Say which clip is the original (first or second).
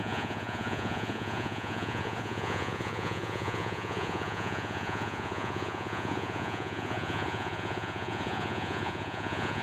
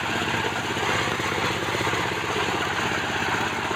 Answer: second